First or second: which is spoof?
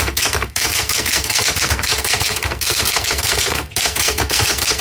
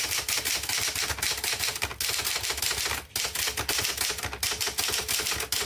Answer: first